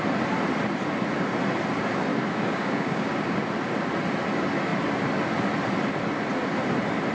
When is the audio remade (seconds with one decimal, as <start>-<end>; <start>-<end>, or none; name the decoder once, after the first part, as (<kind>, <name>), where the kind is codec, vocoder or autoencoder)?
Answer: 2.1-3.5 (codec, DAC)

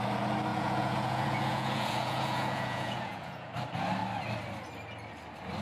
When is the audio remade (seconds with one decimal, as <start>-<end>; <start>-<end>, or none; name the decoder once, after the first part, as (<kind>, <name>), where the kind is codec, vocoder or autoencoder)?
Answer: 0.5-3.5 (vocoder, Vocos)

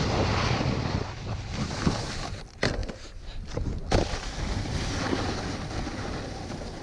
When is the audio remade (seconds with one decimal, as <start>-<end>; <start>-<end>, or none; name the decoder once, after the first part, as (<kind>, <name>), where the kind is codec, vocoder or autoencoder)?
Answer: none

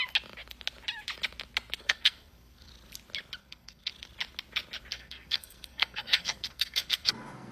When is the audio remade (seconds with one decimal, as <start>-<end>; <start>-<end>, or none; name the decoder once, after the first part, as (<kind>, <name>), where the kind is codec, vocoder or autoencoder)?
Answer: 1.8-2.7 (codec, SNAC); 3.4-3.9; 4.9-7.5

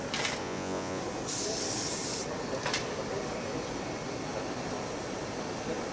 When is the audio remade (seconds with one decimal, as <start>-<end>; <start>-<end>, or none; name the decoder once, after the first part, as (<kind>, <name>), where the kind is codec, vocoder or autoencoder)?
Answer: 0.4-1.0 (vocoder, Vocos)

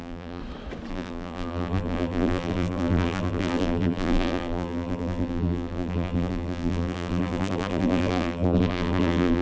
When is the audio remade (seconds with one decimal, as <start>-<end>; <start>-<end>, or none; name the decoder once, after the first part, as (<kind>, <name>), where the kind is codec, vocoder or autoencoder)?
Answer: 0.0-0.4 (vocoder, BigVGAN v2); 0.9-9.4

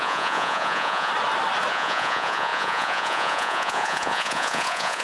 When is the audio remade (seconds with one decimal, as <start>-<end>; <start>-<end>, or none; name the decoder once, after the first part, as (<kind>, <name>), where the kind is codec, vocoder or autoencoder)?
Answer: 0.0-1.1 (vocoder, Vocos); 1.7-5.0

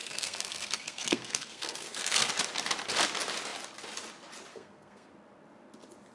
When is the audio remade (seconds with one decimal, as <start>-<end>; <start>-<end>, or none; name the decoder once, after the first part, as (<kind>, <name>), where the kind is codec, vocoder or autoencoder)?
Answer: 0.0-2.3 (codec, SNAC); 4.5-5.1